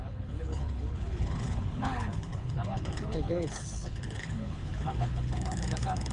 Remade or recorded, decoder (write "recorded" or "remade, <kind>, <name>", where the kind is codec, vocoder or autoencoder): remade, codec, HILCodec